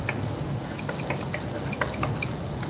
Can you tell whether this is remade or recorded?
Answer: recorded